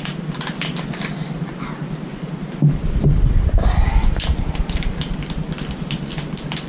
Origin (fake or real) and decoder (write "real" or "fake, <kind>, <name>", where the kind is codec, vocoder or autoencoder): real